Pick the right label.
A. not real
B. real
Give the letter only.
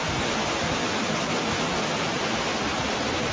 B